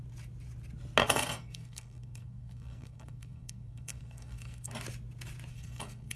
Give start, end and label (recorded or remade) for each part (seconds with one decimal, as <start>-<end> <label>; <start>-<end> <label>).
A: 0.0-1.0 recorded; 1.0-4.7 remade; 4.7-5.5 recorded; 5.5-6.2 remade

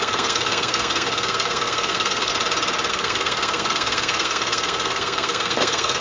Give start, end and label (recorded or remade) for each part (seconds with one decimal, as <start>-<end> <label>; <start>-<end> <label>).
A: 0.0-2.3 remade; 2.3-2.9 recorded; 2.9-6.0 remade

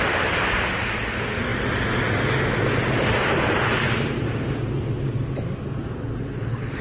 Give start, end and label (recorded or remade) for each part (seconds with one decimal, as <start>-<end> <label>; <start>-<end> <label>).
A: 0.0-6.8 recorded

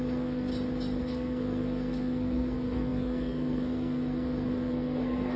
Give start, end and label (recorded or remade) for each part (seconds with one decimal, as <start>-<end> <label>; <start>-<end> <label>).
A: 0.0-0.5 remade; 0.5-1.0 recorded; 1.0-5.4 remade

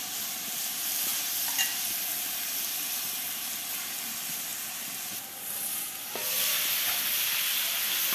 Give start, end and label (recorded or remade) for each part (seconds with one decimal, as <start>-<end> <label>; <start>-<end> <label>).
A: 0.0-8.1 recorded